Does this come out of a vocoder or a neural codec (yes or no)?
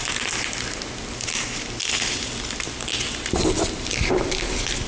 no